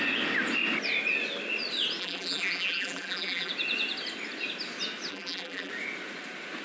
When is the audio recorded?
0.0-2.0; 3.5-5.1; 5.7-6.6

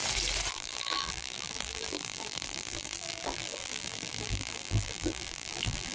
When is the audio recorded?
0.0-0.5

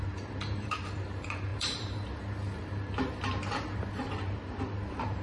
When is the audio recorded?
none

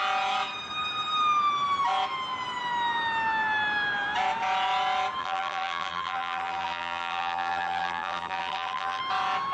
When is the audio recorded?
0.0-5.2; 9.0-9.5

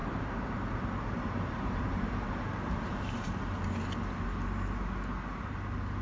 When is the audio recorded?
3.6-6.0

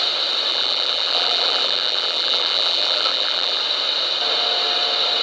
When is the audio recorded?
0.0-0.5; 3.6-5.2